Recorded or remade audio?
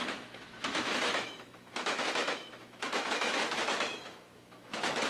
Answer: remade